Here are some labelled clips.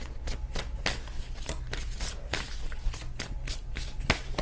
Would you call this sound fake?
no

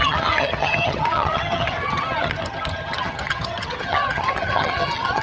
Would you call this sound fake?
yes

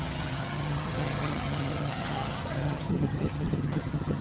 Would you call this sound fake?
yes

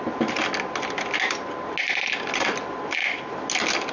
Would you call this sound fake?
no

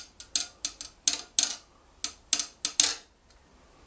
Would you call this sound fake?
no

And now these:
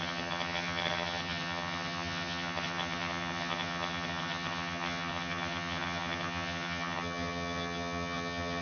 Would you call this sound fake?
yes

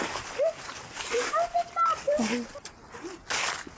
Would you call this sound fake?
no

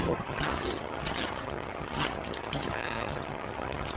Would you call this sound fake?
yes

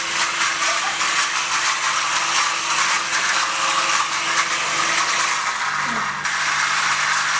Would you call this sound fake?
no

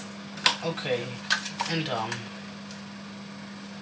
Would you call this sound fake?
no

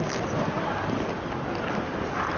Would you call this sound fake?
no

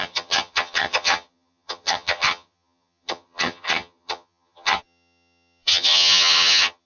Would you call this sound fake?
yes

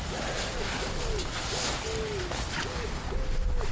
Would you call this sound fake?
no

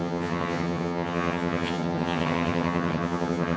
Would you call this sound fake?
yes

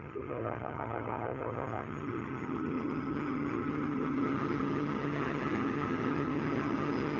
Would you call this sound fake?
yes